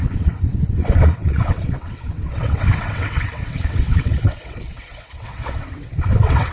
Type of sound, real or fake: fake